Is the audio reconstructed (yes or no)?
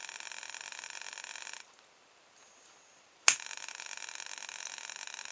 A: no